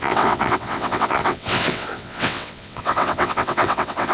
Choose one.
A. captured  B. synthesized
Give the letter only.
B